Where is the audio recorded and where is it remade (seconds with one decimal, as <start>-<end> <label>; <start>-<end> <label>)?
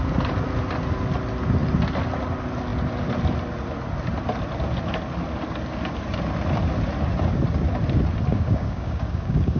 0.0-8.3 recorded; 8.3-9.6 remade